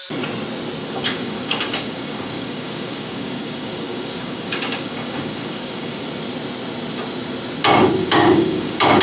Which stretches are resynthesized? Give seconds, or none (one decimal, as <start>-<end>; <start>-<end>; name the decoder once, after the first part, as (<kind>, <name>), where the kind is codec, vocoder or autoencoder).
0.8-6.0 (codec, DAC); 8.0-9.0

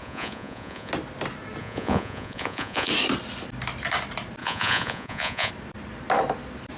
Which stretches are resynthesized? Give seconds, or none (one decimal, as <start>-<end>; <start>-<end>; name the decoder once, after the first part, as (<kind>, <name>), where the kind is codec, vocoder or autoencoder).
0.0-0.9 (vocoder, Vocos); 1.6-2.9; 4.4-5.5

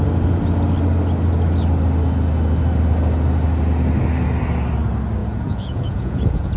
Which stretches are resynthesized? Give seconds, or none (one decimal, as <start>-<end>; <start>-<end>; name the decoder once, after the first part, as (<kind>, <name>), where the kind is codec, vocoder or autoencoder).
5.2-6.6 (vocoder, Vocos)